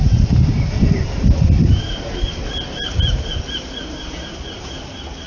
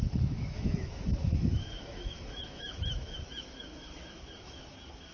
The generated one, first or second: second